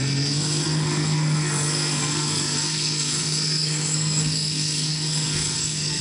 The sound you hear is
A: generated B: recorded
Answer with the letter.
A